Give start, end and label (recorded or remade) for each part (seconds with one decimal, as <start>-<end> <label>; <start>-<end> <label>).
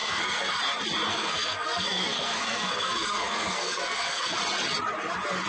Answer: 0.0-0.6 remade; 0.6-1.1 recorded; 1.1-4.4 remade; 4.4-5.5 recorded